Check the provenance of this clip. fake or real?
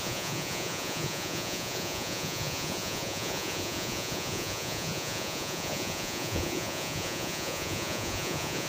fake